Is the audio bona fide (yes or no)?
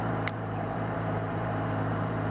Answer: no